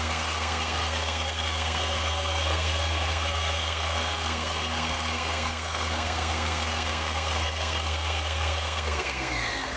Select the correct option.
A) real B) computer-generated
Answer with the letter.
B